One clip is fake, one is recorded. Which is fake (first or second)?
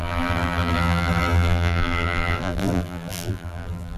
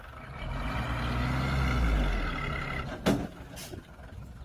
first